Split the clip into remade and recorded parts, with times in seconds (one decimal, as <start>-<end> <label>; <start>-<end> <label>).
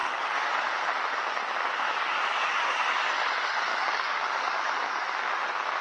0.0-0.5 remade; 0.5-1.9 recorded; 1.9-2.8 remade; 2.8-3.7 recorded; 3.7-5.0 remade; 5.0-5.8 recorded